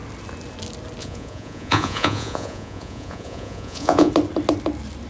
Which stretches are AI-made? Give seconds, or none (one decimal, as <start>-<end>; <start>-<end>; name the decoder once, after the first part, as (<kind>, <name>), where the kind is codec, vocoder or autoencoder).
1.0-4.1 (vocoder, Vocos)